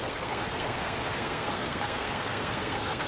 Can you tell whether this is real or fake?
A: fake